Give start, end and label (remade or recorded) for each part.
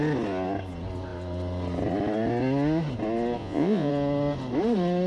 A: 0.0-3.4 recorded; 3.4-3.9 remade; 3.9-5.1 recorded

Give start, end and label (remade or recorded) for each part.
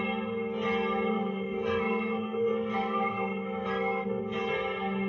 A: 0.0-1.1 recorded; 1.1-4.2 remade; 4.2-5.1 recorded